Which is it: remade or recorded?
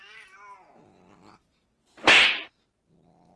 recorded